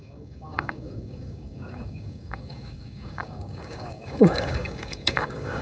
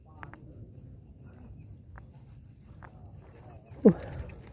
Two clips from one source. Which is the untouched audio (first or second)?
second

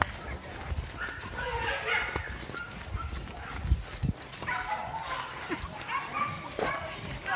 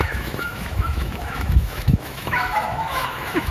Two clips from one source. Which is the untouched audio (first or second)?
first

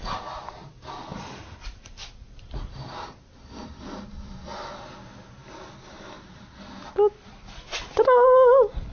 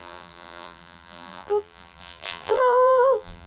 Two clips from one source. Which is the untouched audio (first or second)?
first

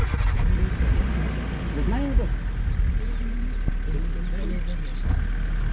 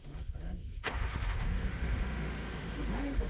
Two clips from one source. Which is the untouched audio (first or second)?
first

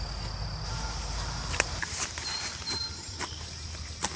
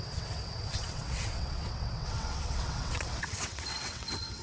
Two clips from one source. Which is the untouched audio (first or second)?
first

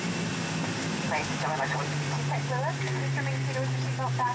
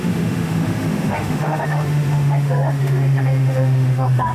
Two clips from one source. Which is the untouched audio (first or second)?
first